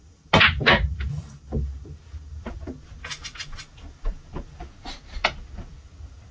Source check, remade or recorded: recorded